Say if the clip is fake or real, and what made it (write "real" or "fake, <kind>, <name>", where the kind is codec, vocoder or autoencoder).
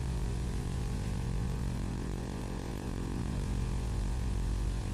fake, vocoder, Vocos